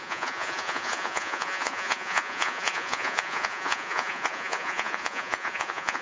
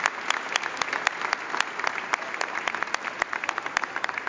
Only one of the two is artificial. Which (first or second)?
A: first